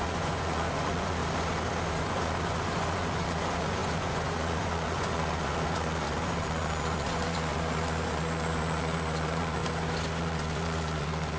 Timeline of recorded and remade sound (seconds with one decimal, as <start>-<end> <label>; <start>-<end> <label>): 0.0-1.2 remade; 1.2-1.9 recorded; 1.9-9.6 remade; 9.6-10.2 recorded; 10.2-11.4 remade